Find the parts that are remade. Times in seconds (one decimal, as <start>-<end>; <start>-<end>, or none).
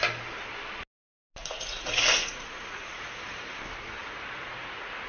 1.4-3.6; 4.0-5.1